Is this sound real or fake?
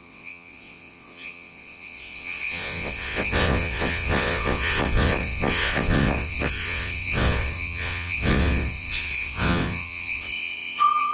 fake